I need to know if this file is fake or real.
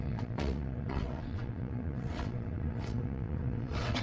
fake